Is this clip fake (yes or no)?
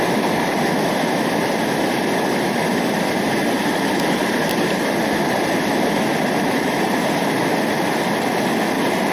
no